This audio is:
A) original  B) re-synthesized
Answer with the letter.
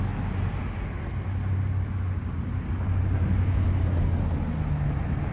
A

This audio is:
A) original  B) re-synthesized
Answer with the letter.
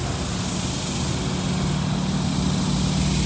A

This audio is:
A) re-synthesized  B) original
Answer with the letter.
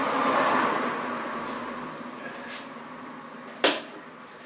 B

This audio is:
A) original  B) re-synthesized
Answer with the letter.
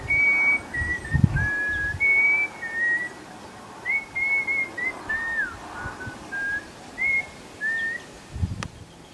A